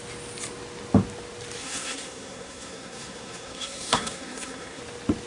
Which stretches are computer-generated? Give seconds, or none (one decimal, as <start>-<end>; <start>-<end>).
1.6-4.8